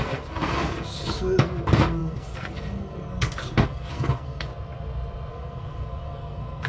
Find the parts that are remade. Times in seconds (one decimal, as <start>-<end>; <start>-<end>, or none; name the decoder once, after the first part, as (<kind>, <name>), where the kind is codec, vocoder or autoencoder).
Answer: 0.0-4.5 (codec, SNAC); 5.3-6.7